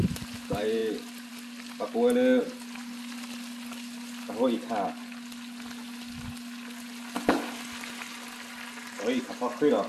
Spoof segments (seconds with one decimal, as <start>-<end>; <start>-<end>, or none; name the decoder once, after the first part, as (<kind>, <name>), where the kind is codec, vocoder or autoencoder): none